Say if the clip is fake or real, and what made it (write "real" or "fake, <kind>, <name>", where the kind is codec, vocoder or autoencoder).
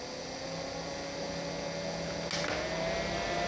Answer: real